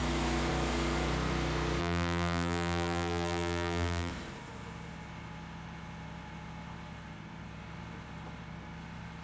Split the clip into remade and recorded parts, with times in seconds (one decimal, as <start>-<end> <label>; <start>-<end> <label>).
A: 0.0-1.8 recorded; 1.8-4.1 remade; 4.1-9.2 recorded